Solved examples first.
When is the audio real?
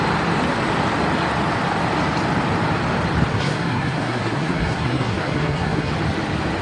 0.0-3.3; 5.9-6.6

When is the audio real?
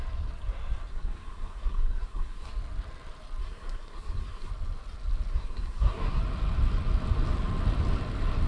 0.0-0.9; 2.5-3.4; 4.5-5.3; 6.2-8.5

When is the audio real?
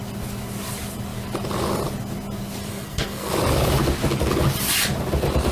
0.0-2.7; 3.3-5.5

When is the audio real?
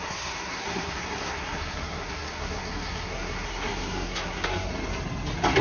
4.7-5.6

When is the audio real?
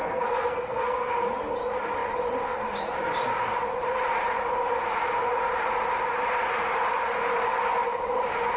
1.1-8.6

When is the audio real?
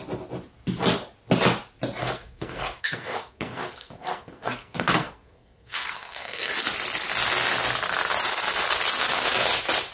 0.0-2.0; 6.5-9.9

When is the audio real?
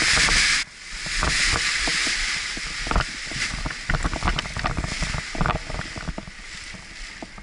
0.0-7.4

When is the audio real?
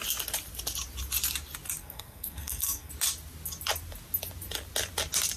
0.0-1.8; 2.9-5.4